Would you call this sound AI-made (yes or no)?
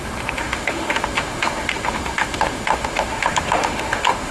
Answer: yes